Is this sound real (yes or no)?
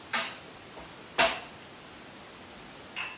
yes